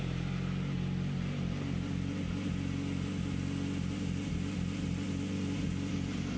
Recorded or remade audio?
recorded